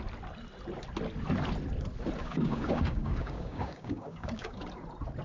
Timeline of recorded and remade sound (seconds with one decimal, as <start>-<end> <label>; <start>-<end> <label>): 0.0-2.2 recorded; 2.2-4.6 remade; 4.6-5.2 recorded